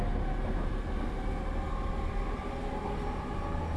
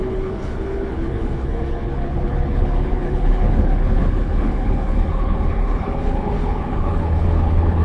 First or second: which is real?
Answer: first